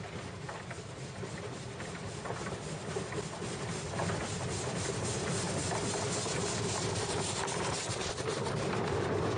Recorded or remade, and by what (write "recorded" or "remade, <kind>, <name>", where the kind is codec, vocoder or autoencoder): recorded